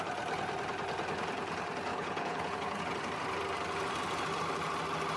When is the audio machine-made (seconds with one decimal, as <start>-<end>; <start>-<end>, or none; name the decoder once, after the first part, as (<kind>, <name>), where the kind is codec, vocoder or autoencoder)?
1.9-2.8 (codec, HILCodec)